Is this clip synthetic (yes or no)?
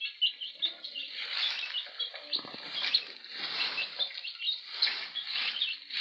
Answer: no